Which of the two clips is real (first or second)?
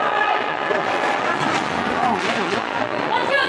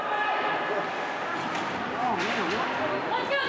second